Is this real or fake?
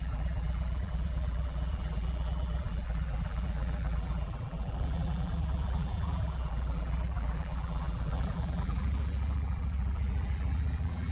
fake